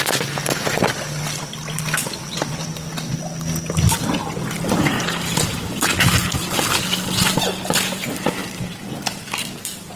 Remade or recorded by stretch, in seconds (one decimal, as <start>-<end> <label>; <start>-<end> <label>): 0.0-10.0 recorded